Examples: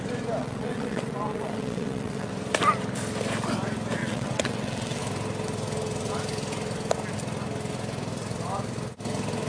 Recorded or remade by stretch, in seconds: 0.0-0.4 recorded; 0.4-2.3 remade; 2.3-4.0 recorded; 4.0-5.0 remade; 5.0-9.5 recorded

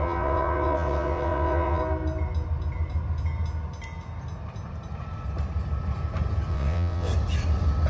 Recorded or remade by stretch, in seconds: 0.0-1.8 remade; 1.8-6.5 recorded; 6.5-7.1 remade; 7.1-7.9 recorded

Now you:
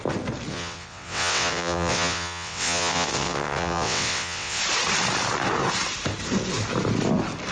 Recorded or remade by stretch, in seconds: 0.0-0.5 recorded; 0.5-4.6 remade; 4.6-7.5 recorded

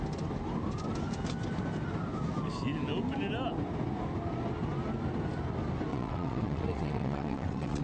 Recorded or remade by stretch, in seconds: 0.0-5.9 recorded; 5.9-7.8 remade

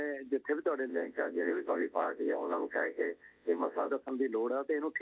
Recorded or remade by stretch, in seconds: 0.0-0.9 recorded; 0.9-3.9 remade; 3.9-5.0 recorded